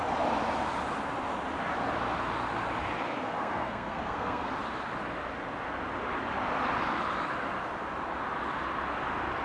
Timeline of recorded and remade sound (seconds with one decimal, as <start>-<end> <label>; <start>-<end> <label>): 0.0-3.4 recorded; 3.4-4.5 remade; 4.5-9.4 recorded